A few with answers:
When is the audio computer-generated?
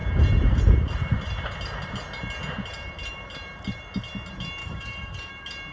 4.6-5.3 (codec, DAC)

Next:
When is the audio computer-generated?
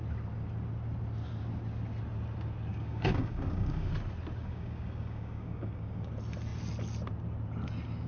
2.7-3.9 (codec, DAC); 4.4-6.1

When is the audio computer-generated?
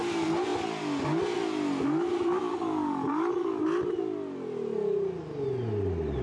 2.5-3.6 (codec, DAC)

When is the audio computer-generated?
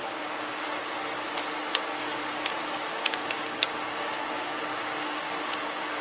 0.0-0.8 (codec, DAC); 1.6-2.2; 2.9-6.0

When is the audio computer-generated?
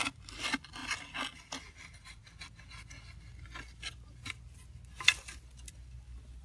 none